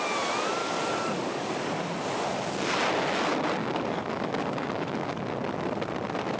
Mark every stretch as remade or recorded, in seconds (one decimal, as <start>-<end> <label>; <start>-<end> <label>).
0.0-0.6 recorded; 0.6-1.9 remade; 1.9-3.6 recorded; 3.6-5.2 remade; 5.2-6.4 recorded